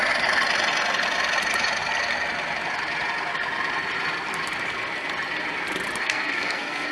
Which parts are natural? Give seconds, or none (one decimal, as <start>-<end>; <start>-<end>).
0.0-6.0